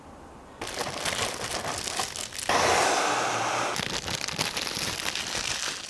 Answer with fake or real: real